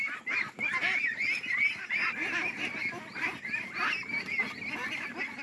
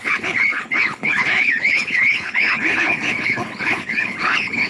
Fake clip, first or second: second